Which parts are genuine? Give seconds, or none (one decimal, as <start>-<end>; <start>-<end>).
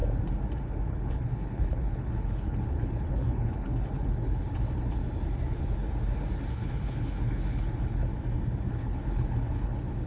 0.0-0.9; 5.0-6.5; 8.1-8.7